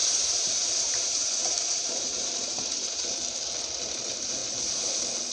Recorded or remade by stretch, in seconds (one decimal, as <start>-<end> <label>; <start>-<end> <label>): 0.0-3.2 remade; 3.2-5.3 recorded